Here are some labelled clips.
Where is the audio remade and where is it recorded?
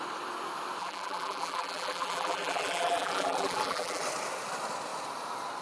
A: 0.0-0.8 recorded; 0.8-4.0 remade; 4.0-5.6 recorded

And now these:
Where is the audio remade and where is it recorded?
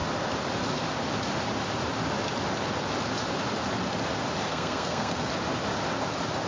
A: 0.0-4.5 recorded; 4.5-5.3 remade; 5.3-6.5 recorded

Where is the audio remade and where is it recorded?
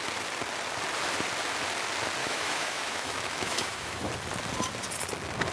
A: 0.0-2.2 recorded; 2.2-4.1 remade; 4.1-5.5 recorded